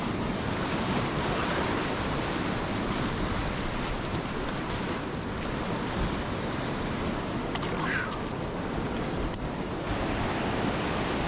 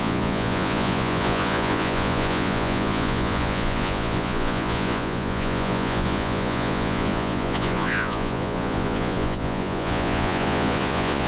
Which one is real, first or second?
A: first